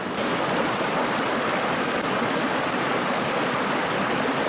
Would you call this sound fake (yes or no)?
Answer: no